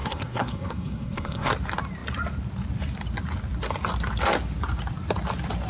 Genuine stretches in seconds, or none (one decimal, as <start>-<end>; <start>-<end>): 1.5-5.7